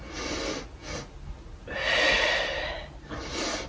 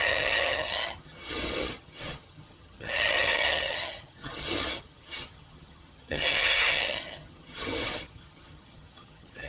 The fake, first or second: second